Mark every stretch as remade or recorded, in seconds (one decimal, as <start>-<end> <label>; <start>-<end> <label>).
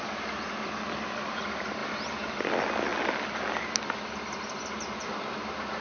0.0-5.8 recorded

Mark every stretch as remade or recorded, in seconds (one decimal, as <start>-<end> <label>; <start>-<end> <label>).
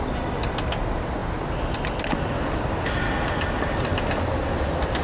0.0-5.0 recorded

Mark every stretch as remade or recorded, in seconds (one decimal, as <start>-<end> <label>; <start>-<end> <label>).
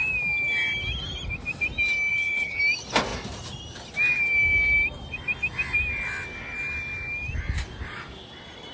0.0-2.1 recorded; 2.1-2.6 remade; 2.6-8.7 recorded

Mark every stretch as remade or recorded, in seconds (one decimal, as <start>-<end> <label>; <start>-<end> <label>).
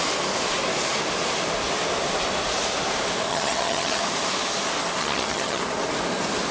0.0-3.3 recorded; 3.3-4.0 remade; 4.0-5.0 recorded; 5.0-5.6 remade; 5.6-6.5 recorded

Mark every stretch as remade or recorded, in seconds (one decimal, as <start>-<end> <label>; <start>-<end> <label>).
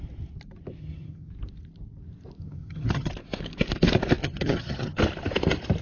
0.0-0.8 recorded; 0.8-1.3 remade; 1.3-2.4 recorded; 2.4-3.1 remade; 3.1-4.2 recorded; 4.2-5.0 remade; 5.0-5.8 recorded